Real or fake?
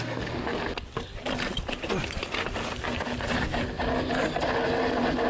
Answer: real